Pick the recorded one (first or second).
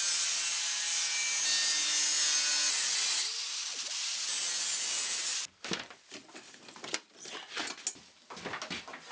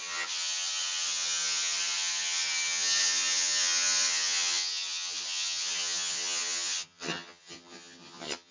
first